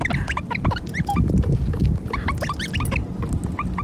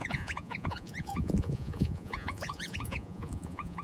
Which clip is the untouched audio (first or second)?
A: first